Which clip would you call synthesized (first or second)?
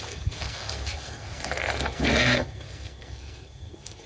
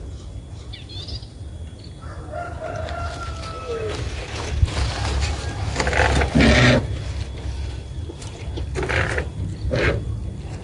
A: first